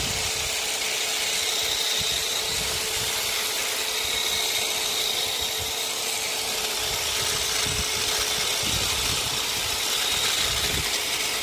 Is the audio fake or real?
real